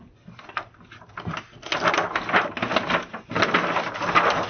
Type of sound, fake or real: real